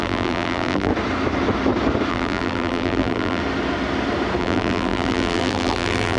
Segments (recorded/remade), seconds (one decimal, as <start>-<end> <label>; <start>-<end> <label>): 0.0-0.9 remade; 0.9-2.1 recorded; 2.1-3.4 remade; 3.4-4.4 recorded; 4.4-6.2 remade